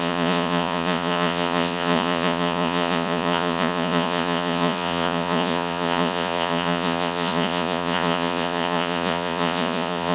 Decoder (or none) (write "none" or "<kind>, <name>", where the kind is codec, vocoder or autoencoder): vocoder, Vocos